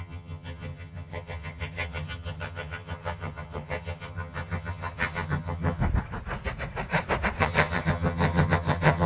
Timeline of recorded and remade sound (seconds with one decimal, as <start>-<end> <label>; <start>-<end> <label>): 0.0-5.8 remade; 5.8-7.4 recorded; 7.4-9.1 remade